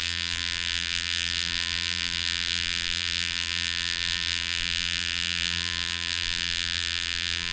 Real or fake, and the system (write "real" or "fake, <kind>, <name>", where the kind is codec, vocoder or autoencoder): fake, vocoder, BigVGAN v2